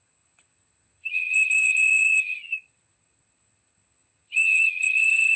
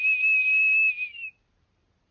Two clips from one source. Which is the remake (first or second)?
first